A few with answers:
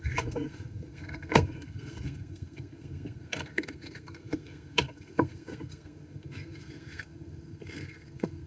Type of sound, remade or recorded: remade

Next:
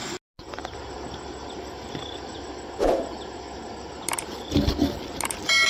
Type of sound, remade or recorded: recorded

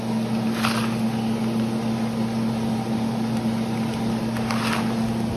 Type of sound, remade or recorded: recorded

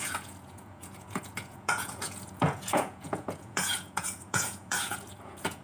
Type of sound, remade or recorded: remade